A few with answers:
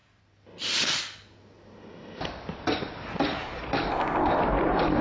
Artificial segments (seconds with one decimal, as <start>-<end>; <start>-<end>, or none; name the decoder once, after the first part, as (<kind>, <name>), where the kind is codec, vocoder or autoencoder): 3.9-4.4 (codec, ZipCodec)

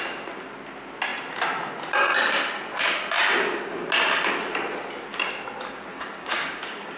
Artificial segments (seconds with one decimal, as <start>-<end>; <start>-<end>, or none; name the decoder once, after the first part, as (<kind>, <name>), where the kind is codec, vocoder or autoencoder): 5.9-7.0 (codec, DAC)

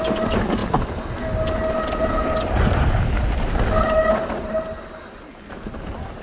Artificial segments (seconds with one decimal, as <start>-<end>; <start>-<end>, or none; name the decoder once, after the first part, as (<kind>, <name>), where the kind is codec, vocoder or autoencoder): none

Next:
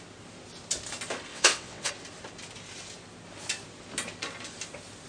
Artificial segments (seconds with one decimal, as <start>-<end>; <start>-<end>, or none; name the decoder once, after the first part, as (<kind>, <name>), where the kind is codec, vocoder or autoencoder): 1.3-1.9 (vocoder, WaveNeXt)